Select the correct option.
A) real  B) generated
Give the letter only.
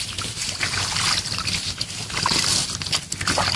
A